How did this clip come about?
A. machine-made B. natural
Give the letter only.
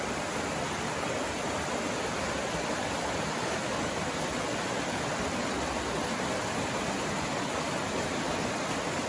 B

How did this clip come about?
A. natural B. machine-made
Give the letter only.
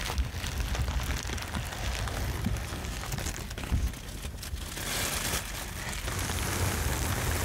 A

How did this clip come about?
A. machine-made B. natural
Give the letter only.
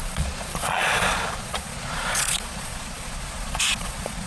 A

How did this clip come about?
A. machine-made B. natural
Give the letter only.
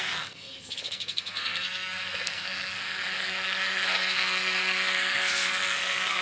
A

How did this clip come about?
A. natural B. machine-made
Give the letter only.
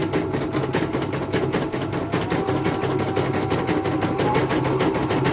A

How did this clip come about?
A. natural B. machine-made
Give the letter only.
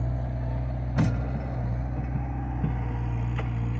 A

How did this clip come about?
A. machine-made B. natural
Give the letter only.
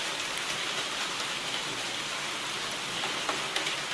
B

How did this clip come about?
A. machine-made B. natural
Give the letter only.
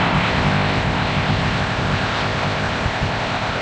A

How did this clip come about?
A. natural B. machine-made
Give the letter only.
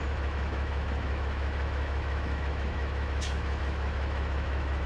B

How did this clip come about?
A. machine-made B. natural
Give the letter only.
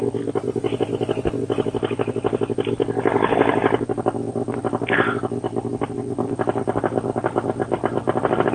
B